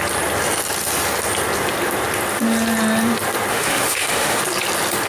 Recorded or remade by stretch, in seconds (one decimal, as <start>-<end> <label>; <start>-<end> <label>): 0.0-3.5 recorded; 3.5-4.4 remade; 4.4-5.1 recorded